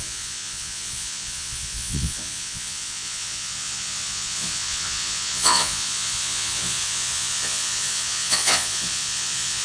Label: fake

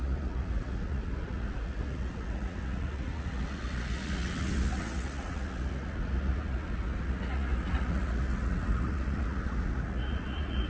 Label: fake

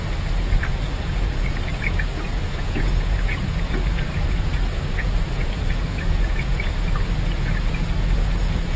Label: fake